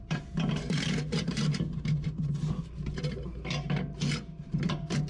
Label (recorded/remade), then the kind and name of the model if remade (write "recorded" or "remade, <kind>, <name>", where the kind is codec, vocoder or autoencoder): remade, vocoder, BigVGAN v2